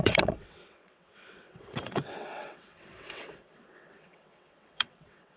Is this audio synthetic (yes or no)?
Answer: yes